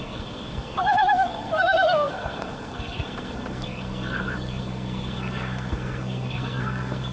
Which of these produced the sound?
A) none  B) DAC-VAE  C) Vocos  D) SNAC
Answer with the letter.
D